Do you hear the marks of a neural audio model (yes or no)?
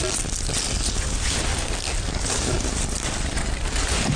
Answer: no